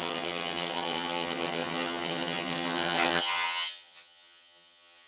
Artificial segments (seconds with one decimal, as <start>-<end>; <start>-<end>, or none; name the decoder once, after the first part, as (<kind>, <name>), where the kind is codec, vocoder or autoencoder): 0.0-5.1 (vocoder, HiFi-GAN)